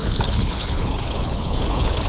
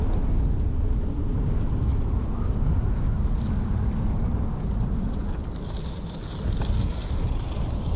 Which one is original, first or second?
second